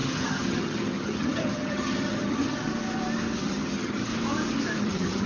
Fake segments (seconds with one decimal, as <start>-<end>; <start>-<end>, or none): 0.0-2.7; 3.4-4.1; 4.8-5.3